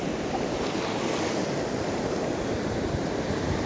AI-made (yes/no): no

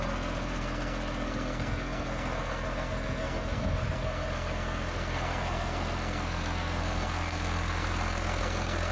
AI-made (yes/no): yes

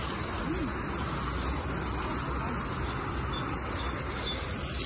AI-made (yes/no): no